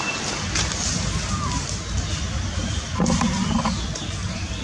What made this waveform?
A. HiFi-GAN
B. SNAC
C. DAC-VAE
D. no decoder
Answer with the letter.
D